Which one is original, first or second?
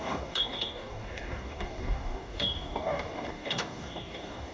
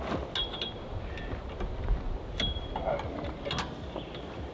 second